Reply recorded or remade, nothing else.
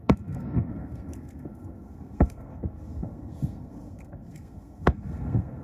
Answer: remade